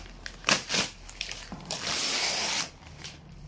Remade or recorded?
remade